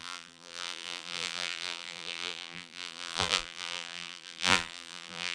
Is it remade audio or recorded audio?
remade